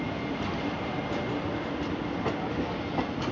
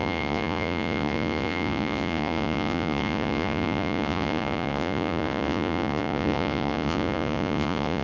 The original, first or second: first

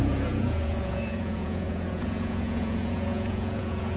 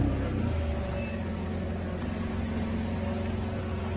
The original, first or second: second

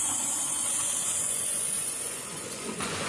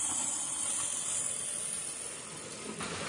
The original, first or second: second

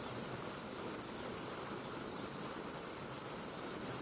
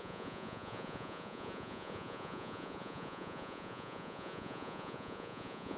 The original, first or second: first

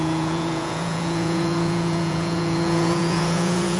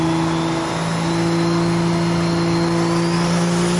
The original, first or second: second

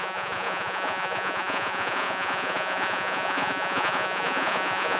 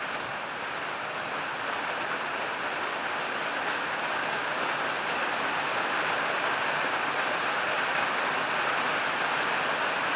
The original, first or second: second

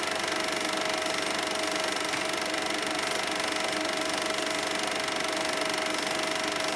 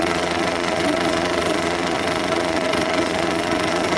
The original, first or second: first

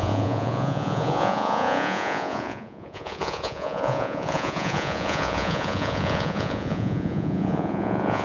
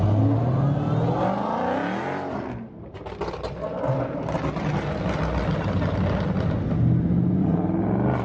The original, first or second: second